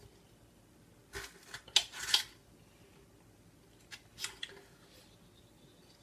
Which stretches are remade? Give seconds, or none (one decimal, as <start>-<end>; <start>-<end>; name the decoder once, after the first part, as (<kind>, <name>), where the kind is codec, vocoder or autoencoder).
none